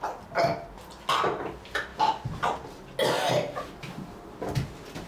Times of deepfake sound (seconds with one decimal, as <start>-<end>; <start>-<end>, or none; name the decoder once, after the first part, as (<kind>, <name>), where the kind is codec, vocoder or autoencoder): none